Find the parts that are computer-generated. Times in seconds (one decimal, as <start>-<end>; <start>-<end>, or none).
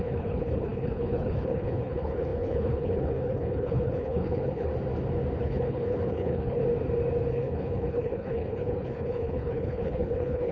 0.0-4.7; 5.4-6.6; 7.3-10.5